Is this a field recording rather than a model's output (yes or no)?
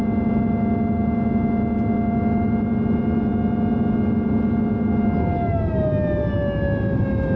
yes